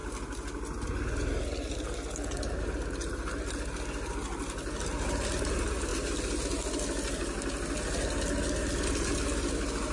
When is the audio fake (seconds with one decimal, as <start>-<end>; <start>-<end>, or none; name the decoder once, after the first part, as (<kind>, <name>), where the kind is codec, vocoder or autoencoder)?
none